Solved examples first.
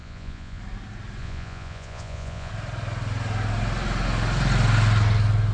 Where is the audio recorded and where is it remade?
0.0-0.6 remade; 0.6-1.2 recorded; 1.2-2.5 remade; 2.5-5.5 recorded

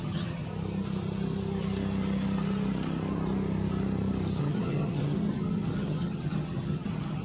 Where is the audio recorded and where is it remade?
0.0-0.5 remade; 0.5-4.4 recorded; 4.4-7.2 remade

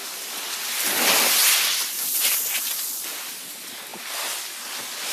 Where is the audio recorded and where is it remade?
0.0-5.1 recorded

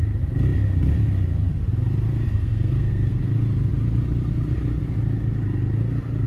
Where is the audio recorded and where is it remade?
0.0-2.4 recorded; 2.4-3.2 remade; 3.2-6.3 recorded

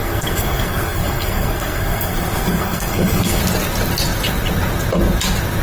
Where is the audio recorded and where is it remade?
0.0-3.4 remade; 3.4-5.6 recorded

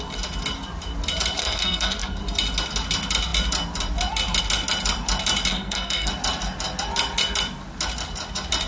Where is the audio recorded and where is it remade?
0.0-1.4 recorded; 1.4-2.2 remade; 2.2-5.5 recorded; 5.5-6.1 remade; 6.1-8.7 recorded